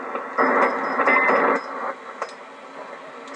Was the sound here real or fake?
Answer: real